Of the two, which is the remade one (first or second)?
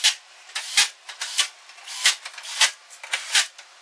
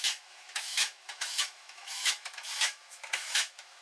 second